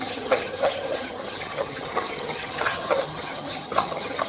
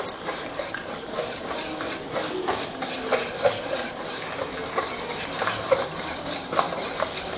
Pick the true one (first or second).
second